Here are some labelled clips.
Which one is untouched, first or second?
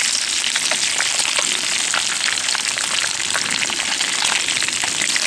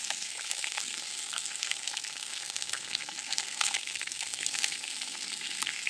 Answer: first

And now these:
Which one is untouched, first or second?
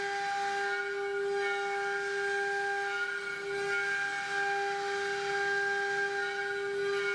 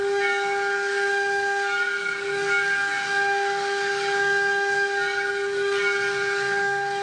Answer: first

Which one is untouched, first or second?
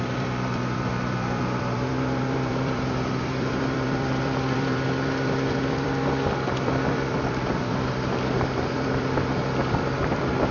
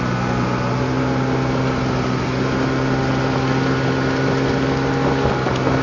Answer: second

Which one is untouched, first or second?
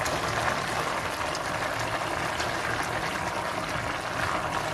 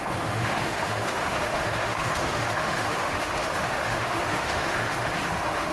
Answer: first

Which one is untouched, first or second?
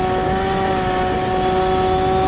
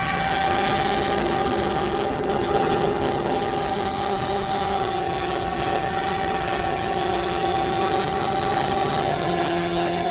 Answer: first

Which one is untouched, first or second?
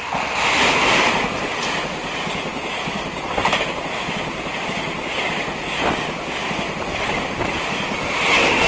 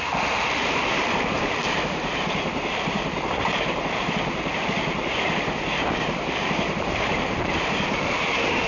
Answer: first